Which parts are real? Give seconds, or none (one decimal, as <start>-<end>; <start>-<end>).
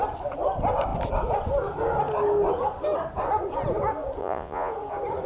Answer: 0.0-4.2; 4.7-5.3